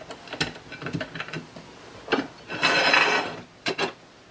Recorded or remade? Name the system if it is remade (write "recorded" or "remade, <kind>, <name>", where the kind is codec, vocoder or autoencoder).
recorded